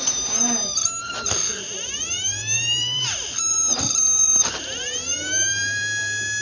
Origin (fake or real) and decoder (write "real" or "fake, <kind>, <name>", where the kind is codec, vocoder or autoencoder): fake, vocoder, BigVGAN v2